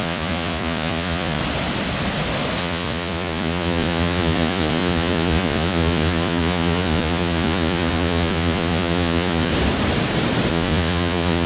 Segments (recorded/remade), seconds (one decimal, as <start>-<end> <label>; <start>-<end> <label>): 0.0-1.4 remade; 1.4-2.6 recorded; 2.6-9.5 remade; 9.5-10.5 recorded; 10.5-11.5 remade